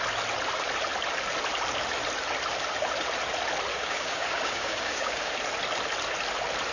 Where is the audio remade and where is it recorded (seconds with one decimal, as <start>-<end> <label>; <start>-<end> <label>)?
0.0-3.7 recorded; 3.7-5.3 remade; 5.3-6.7 recorded